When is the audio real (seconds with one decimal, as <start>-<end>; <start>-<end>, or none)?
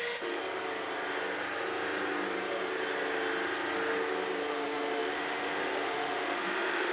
0.4-4.5